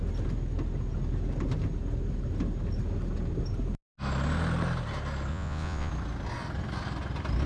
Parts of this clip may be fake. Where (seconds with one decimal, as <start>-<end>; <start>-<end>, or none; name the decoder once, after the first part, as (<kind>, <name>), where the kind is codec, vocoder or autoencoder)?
5.3-5.9 (vocoder, Vocos)